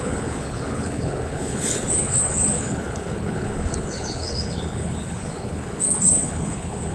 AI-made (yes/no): yes